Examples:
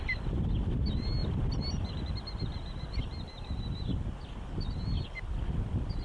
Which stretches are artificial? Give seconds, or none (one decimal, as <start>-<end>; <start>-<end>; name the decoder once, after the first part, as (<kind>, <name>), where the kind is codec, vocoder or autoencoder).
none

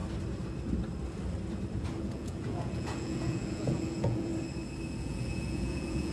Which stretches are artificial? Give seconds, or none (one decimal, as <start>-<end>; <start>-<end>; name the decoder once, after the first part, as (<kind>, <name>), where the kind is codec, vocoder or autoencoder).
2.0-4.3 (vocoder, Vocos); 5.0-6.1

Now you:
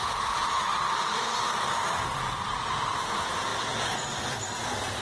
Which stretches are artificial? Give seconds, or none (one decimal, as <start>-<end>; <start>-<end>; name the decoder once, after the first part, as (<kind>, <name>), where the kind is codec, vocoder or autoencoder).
0.0-0.7 (vocoder, Vocos); 3.0-3.5; 4.6-5.0